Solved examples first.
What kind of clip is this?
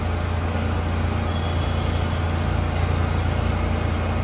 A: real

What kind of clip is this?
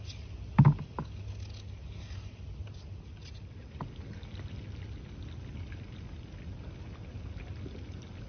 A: real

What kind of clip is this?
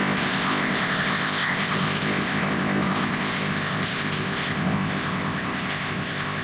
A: fake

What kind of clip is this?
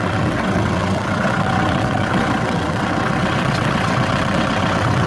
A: fake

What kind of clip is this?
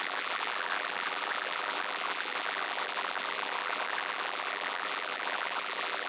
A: fake